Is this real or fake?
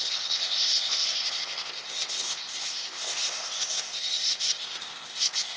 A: fake